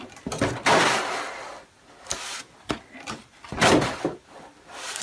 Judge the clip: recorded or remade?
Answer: recorded